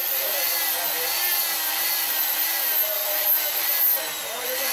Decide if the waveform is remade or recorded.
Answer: recorded